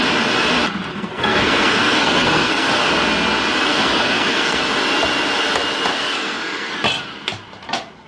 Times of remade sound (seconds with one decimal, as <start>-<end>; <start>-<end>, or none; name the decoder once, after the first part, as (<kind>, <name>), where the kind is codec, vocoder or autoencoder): 0.9-2.9 (codec, SNAC); 3.7-4.6; 5.9-6.7